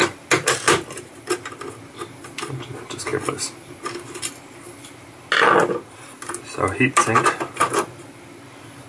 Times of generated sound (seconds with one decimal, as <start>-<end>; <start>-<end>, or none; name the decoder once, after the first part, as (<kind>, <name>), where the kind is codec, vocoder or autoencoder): none